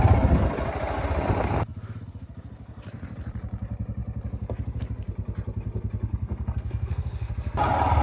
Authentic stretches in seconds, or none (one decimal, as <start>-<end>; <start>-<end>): 0.0-6.1; 7.3-8.0